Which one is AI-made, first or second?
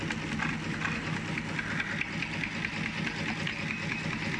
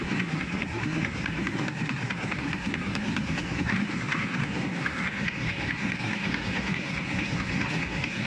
second